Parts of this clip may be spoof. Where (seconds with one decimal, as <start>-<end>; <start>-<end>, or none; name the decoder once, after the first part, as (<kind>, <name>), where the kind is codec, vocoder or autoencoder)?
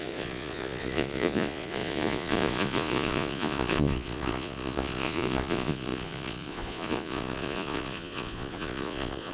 0.0-9.3 (vocoder, Vocos)